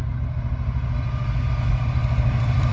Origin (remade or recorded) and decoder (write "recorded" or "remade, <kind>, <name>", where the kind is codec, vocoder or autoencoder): recorded